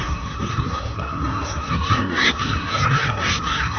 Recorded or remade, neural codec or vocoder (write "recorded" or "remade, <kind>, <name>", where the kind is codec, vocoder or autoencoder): remade, codec, SNAC